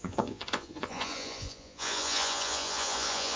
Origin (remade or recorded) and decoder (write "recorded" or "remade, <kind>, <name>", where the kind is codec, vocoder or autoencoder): remade, vocoder, Vocos